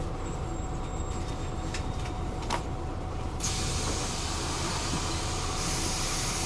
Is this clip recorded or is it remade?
remade